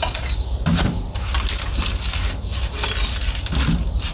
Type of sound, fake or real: real